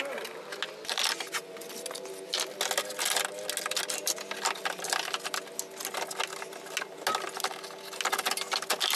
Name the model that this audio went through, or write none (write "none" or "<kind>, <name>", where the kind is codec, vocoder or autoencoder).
none